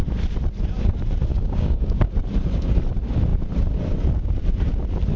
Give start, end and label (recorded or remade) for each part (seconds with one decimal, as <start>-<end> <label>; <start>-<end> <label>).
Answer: 0.0-1.3 recorded; 1.3-2.1 remade; 2.1-5.2 recorded

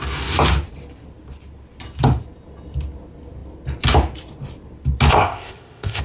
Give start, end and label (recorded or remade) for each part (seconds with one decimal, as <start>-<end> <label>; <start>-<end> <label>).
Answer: 0.0-5.1 recorded; 5.1-6.0 remade

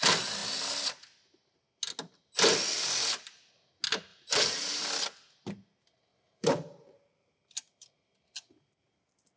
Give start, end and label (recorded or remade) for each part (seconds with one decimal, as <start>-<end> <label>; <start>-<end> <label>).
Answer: 0.0-4.1 recorded; 4.1-4.9 remade; 4.9-6.1 recorded; 6.1-7.4 remade; 7.4-9.4 recorded

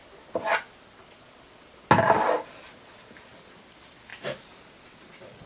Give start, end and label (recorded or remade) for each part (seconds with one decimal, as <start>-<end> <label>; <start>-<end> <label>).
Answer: 0.0-5.5 recorded

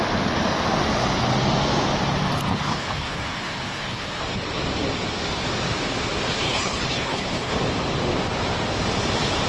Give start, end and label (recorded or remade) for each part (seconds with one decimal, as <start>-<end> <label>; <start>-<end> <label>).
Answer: 0.0-2.5 recorded; 2.5-4.2 remade; 4.2-6.4 recorded; 6.4-7.6 remade; 7.6-9.5 recorded

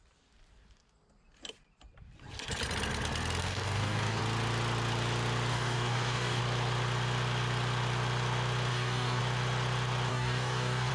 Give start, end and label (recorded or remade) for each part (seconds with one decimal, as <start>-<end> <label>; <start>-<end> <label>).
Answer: 0.0-3.4 recorded; 3.4-4.2 remade; 4.2-5.5 recorded; 5.5-6.4 remade; 6.4-8.7 recorded; 8.7-9.2 remade; 9.2-10.1 recorded; 10.1-10.9 remade

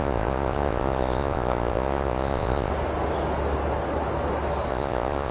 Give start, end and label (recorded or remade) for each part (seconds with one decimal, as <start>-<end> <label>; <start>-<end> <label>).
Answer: 0.0-2.7 remade; 2.7-4.7 recorded; 4.7-5.3 remade